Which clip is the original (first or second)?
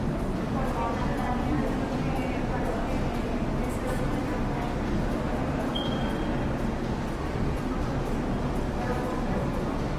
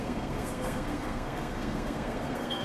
first